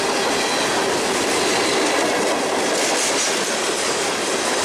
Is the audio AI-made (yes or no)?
no